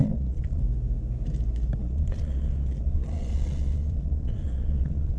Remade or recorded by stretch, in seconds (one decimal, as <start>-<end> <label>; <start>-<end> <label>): 0.0-0.6 remade; 0.6-1.8 recorded; 1.8-5.2 remade